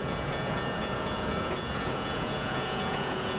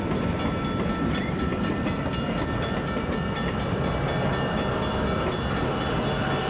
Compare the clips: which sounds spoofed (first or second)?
first